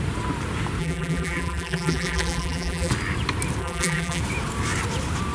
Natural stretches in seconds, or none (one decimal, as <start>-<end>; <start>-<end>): 0.0-0.8; 2.9-3.6; 4.2-5.3